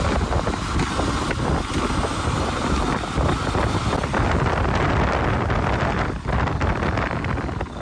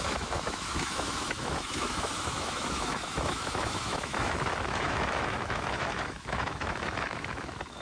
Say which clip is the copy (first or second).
second